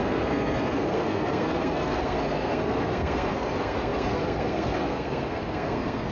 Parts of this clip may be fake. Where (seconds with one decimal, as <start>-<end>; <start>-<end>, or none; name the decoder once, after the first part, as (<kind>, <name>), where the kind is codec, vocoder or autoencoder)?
0.0-6.1 (codec, SNAC)